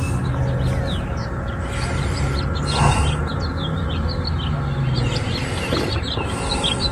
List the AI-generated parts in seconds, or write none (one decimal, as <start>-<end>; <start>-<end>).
none